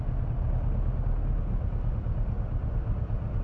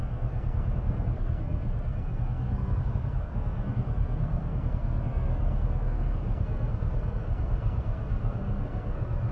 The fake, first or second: second